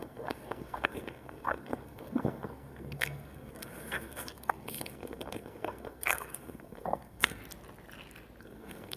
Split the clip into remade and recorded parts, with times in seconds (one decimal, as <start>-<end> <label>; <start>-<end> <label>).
0.0-7.4 remade; 7.4-8.4 recorded; 8.4-9.0 remade